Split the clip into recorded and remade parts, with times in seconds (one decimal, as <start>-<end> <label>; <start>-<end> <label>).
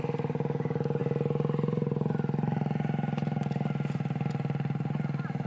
0.0-5.5 recorded